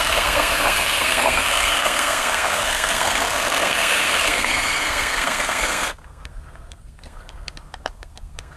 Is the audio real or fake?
fake